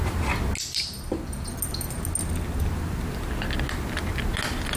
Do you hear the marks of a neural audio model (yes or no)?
no